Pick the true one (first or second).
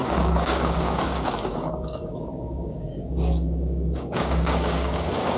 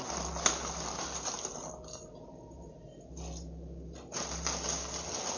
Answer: second